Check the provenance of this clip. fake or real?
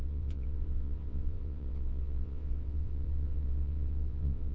fake